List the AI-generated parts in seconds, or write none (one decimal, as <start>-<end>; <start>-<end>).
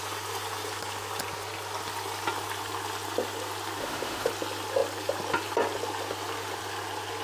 3.8-4.3